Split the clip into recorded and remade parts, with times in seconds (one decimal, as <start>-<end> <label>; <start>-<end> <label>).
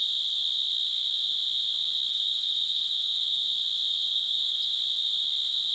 0.0-2.1 recorded; 2.1-3.4 remade; 3.4-3.9 recorded; 3.9-4.6 remade; 4.6-5.7 recorded